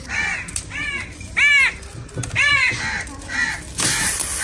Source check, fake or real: real